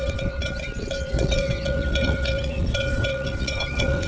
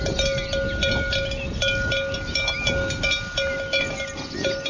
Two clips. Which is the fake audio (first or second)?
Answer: first